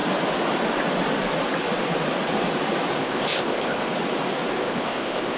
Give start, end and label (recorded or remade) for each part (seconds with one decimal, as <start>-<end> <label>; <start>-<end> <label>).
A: 0.0-3.0 recorded; 3.0-3.9 remade; 3.9-4.6 recorded; 4.6-5.4 remade